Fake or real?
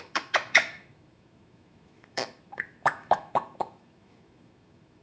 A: fake